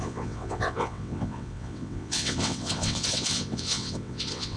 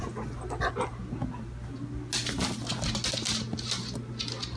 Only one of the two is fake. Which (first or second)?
first